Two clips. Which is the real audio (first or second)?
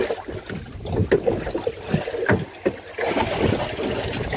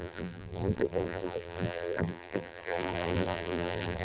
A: first